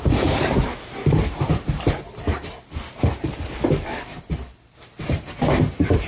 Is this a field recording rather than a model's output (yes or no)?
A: no